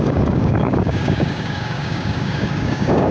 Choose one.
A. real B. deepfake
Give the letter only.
B